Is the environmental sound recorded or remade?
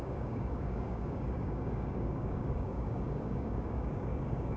remade